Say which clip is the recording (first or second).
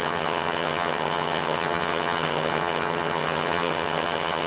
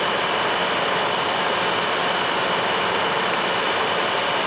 second